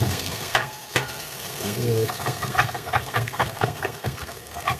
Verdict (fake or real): fake